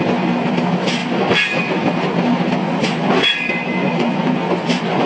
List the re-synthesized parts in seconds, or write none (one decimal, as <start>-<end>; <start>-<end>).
2.6-3.3; 3.8-5.1